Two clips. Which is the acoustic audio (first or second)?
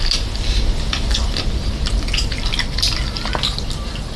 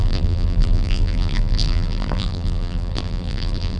first